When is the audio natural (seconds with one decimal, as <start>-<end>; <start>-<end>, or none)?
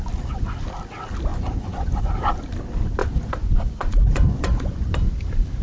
0.0-1.3; 2.1-3.0; 4.9-5.6